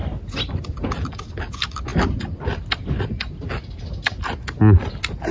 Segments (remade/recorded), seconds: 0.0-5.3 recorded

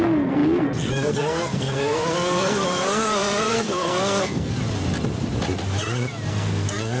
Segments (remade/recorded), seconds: 0.0-4.5 remade; 4.5-6.3 recorded; 6.3-7.0 remade

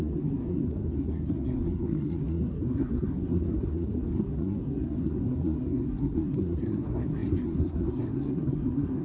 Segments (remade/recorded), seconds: 0.0-9.0 remade

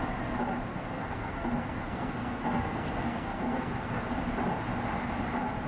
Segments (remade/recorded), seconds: 0.0-0.7 recorded; 0.7-4.1 remade; 4.1-5.7 recorded

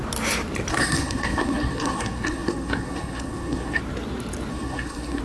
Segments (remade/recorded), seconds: 0.0-0.7 recorded; 0.7-3.8 remade; 3.8-4.5 recorded; 4.5-5.2 remade

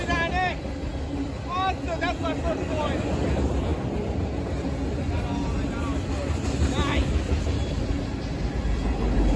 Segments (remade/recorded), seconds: 0.0-9.4 recorded